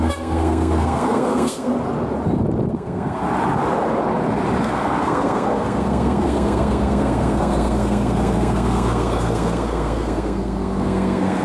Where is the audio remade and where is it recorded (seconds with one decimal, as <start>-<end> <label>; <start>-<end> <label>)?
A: 0.0-1.7 remade; 1.7-2.7 recorded; 2.7-3.2 remade; 3.2-4.6 recorded; 4.6-11.4 remade